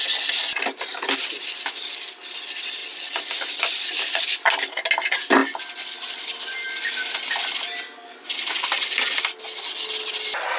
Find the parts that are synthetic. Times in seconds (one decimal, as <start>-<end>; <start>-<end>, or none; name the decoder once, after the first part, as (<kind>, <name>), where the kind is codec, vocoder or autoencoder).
none